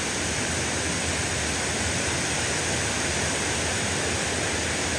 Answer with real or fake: real